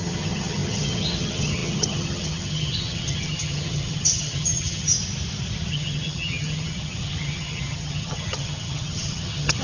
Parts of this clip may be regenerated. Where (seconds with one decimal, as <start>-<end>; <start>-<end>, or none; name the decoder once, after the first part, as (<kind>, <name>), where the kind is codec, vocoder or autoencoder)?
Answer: 0.0-4.9 (vocoder, HiFi-GAN); 5.7-9.6